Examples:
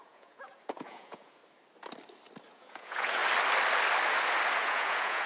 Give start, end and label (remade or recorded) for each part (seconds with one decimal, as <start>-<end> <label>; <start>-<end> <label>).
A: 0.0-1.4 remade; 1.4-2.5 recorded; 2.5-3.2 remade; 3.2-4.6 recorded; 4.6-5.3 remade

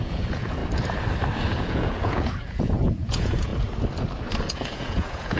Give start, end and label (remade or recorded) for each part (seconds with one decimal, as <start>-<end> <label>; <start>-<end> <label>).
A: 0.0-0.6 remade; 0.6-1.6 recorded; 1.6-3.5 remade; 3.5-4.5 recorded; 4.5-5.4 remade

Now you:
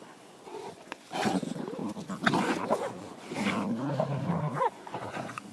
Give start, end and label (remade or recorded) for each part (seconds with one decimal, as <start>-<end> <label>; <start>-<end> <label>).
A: 0.0-1.8 remade; 1.8-2.3 recorded; 2.3-3.5 remade; 3.5-4.4 recorded; 4.4-5.5 remade

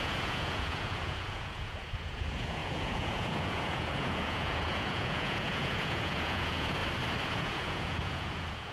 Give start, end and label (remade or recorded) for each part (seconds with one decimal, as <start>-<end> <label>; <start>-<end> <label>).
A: 0.0-6.8 remade; 6.8-7.3 recorded; 7.3-8.7 remade

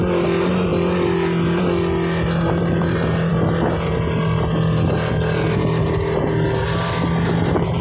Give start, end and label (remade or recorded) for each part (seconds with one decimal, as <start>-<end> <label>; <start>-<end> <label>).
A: 0.0-7.8 recorded

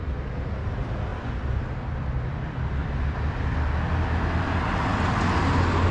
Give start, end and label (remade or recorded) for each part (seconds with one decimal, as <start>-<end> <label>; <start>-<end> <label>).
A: 0.0-5.9 recorded

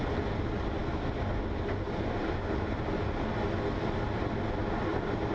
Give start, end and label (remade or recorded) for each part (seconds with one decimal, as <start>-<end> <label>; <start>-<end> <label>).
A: 0.0-5.3 recorded

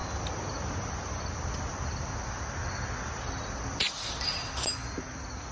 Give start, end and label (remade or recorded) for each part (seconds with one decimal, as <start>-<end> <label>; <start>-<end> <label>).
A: 0.0-5.5 recorded